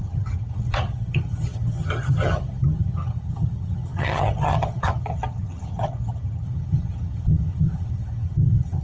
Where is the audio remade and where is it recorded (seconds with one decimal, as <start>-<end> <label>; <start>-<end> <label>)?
0.0-8.8 remade